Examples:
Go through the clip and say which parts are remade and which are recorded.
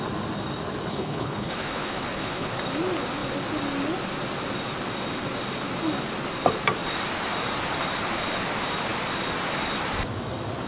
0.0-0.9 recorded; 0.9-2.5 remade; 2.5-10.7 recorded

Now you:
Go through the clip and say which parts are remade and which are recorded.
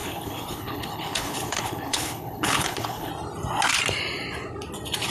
0.0-3.1 remade; 3.1-5.1 recorded